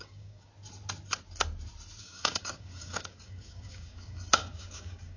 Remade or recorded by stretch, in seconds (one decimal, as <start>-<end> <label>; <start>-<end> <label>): 0.0-0.5 remade; 0.5-2.0 recorded; 2.0-5.2 remade